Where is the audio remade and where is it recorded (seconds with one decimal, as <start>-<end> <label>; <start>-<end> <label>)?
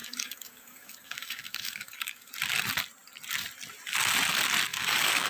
0.0-2.3 remade; 2.3-4.7 recorded; 4.7-5.3 remade